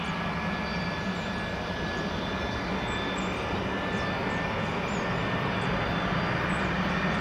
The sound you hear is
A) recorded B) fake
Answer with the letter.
A